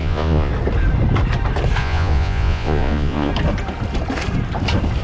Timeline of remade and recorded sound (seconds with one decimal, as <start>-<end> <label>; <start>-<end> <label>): 0.0-0.5 remade; 0.5-1.8 recorded; 1.8-3.3 remade; 3.3-5.0 recorded